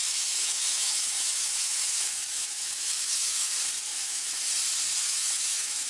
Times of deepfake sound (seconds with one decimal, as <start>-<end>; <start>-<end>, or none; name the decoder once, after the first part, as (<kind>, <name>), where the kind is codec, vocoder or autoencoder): 0.0-3.5 (autoencoder, DAC-VAE); 3.9-4.5; 5.0-5.9